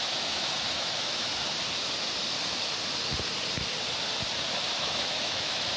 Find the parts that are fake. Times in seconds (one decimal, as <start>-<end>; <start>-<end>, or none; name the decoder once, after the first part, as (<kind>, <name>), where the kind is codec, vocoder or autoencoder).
0.0-1.3 (autoencoder, DAC-VAE); 4.8-5.8